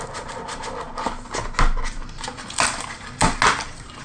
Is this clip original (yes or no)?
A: yes